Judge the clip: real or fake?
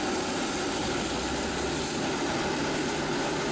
real